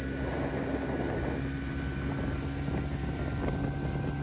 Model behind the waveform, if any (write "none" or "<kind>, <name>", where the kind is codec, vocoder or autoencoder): none